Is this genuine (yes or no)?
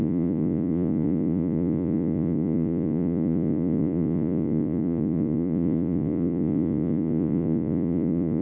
no